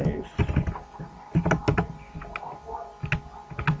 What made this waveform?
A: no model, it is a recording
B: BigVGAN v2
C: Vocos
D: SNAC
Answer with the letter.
A